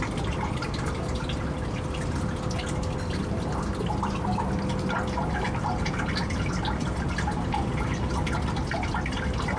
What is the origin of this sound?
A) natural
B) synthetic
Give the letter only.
A